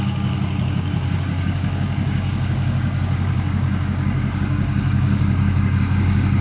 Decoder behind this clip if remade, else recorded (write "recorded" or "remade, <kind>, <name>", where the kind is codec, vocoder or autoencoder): remade, codec, DAC